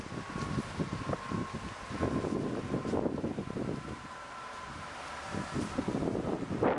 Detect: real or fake real